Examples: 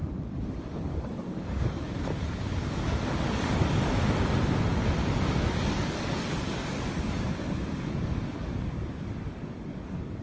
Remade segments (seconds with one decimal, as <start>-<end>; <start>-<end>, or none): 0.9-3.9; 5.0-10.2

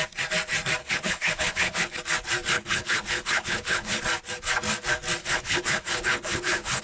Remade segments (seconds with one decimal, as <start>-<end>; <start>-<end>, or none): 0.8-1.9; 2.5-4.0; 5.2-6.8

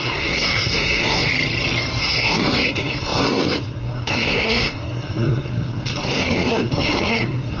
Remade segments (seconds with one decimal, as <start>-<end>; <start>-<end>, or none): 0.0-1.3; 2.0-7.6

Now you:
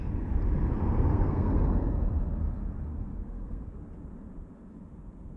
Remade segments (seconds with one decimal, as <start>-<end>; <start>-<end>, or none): 1.1-1.6; 2.9-3.7

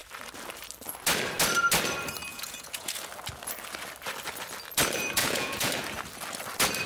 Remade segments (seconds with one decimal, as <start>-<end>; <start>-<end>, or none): 2.3-2.9; 5.2-5.7

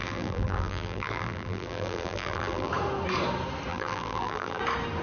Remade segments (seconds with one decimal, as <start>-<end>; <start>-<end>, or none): 0.0-2.7; 3.7-4.6

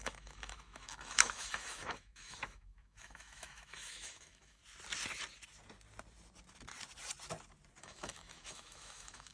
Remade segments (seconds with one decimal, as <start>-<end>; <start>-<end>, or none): 0.0-4.6; 7.8-9.3

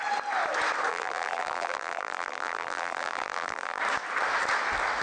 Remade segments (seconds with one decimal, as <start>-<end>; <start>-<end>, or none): 0.9-3.8